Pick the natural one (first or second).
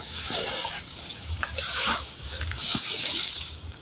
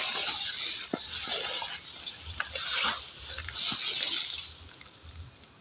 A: second